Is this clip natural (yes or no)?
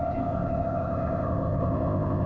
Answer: no